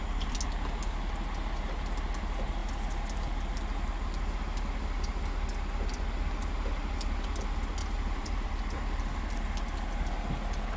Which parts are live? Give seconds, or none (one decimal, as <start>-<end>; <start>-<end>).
0.0-7.8; 8.5-10.8